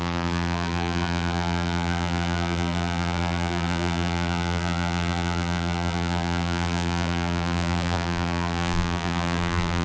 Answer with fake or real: fake